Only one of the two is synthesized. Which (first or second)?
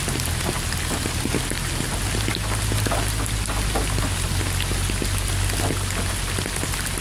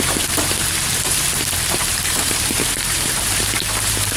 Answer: second